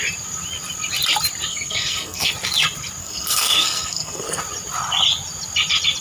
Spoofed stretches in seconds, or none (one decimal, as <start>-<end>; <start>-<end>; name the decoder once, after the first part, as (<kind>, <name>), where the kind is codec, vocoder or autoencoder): 1.5-2.3 (codec, SNAC); 3.0-4.4

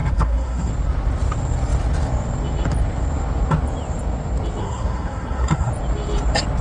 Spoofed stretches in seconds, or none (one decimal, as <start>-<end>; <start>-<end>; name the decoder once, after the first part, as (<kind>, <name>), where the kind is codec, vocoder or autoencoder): 0.0-0.7 (codec, SNAC); 4.6-5.7

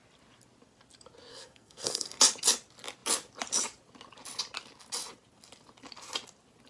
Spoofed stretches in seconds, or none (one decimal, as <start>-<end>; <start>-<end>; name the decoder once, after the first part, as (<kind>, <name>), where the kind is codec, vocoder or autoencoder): 1.3-2.2 (codec, SNAC)

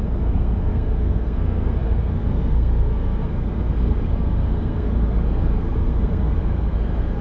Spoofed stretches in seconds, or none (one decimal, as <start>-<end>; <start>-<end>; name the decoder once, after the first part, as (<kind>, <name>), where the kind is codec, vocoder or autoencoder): 0.0-7.2 (codec, SNAC)

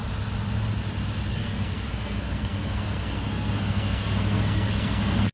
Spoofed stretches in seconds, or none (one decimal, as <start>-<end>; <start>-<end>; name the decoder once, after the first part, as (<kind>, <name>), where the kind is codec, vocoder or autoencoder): 1.3-5.3 (codec, SNAC)